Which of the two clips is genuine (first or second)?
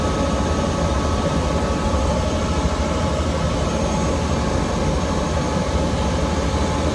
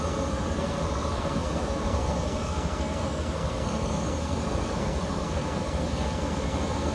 first